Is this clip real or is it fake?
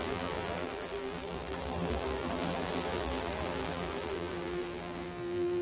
fake